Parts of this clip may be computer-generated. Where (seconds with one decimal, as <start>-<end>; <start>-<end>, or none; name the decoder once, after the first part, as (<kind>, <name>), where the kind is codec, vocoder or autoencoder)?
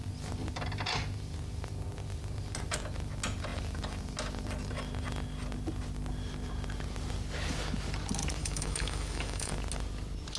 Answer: 8.4-9.5 (autoencoder, DAC-VAE)